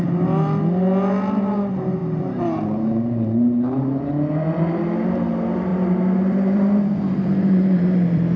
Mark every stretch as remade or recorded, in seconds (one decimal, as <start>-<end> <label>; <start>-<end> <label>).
0.0-5.7 recorded; 5.7-8.4 remade